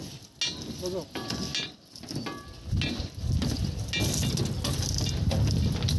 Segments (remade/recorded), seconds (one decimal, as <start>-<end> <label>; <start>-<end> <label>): 0.0-6.0 recorded